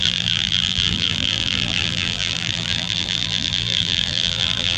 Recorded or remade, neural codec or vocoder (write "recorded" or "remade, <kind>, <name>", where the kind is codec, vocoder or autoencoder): remade, vocoder, BigVGAN v2